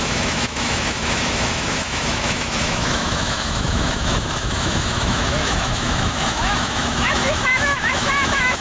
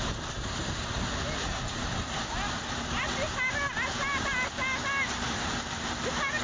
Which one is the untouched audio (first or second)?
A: second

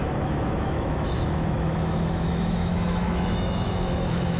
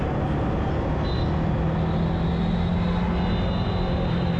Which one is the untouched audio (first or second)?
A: second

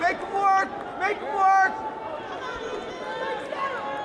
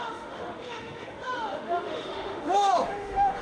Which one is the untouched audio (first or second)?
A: first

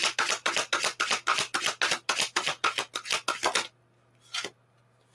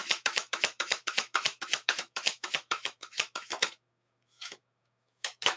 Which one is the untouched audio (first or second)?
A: first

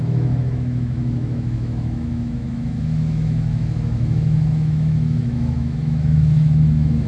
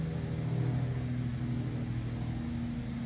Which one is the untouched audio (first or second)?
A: second